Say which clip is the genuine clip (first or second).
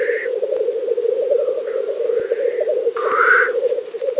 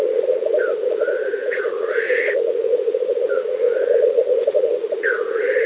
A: first